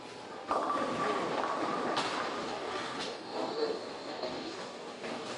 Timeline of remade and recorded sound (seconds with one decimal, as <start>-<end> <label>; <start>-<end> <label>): 0.0-2.4 recorded; 2.4-5.4 remade